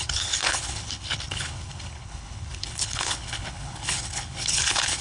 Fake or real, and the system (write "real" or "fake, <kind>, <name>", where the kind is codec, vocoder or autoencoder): fake, codec, HILCodec